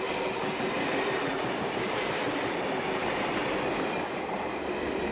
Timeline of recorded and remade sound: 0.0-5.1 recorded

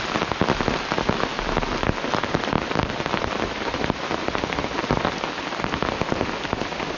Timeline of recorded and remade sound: 0.0-7.0 recorded

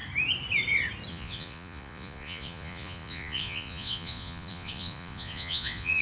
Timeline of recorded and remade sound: 0.0-1.1 recorded; 1.1-6.0 remade

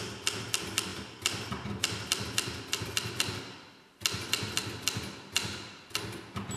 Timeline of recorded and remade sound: 0.0-6.6 recorded

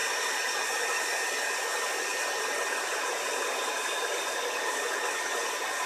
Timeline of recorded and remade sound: 0.0-5.9 recorded